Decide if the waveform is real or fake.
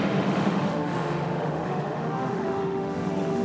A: fake